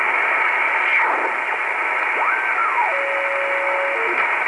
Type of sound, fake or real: real